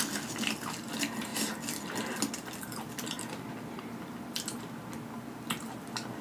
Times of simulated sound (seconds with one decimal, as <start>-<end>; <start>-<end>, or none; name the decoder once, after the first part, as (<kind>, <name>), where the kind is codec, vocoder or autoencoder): none